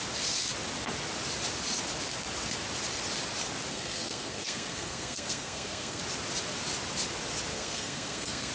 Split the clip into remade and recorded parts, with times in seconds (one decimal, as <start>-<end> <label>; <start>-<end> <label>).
0.0-3.7 recorded; 3.7-6.0 remade; 6.0-7.5 recorded; 7.5-8.5 remade